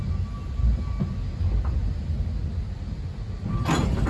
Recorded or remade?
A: recorded